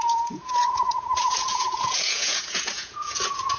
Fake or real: fake